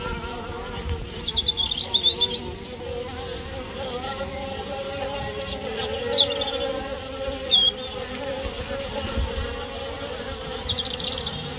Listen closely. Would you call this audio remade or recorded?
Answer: recorded